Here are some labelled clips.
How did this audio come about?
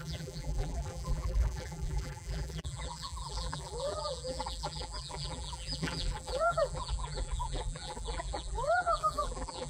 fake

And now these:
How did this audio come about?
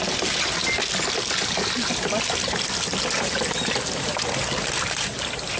real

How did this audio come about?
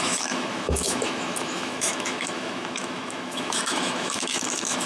fake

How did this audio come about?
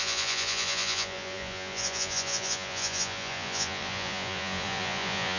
fake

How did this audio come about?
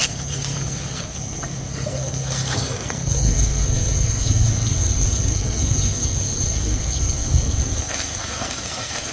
fake